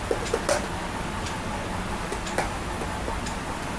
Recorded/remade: recorded